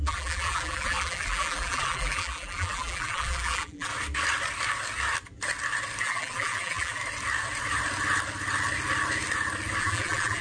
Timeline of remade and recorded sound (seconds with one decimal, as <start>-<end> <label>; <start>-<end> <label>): 0.0-3.9 remade; 3.9-6.0 recorded; 6.0-7.0 remade; 7.0-9.8 recorded; 9.8-10.4 remade